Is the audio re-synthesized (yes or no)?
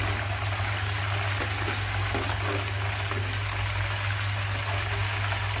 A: no